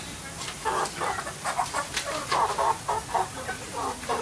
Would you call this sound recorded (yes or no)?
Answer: yes